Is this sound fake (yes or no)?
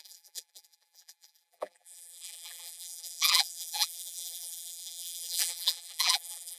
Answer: yes